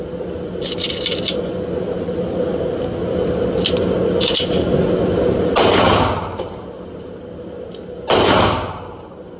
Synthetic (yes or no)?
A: no